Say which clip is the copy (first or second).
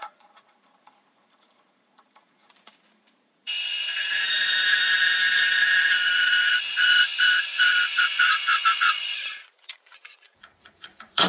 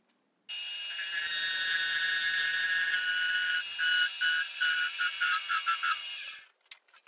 first